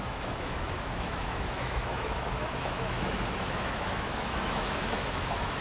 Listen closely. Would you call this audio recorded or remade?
remade